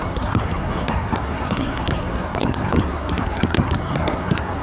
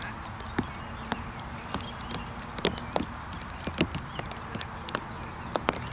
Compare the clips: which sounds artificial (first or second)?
first